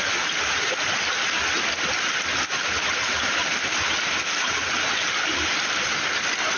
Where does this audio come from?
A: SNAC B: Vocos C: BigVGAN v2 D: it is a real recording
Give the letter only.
D